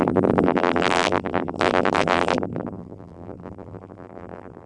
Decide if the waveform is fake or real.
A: fake